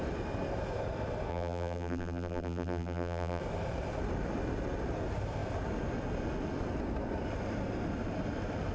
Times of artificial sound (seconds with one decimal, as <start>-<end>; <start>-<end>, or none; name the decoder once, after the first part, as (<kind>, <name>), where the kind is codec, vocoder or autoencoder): 1.3-3.4 (vocoder, BigVGAN v2)

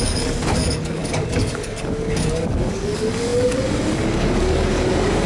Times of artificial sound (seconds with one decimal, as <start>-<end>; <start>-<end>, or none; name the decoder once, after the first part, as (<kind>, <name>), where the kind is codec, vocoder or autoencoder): 0.0-5.3 (codec, DAC)